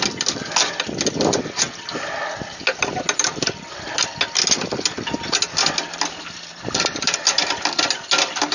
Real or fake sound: real